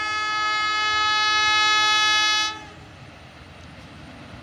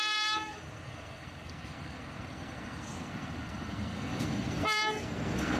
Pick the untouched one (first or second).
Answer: first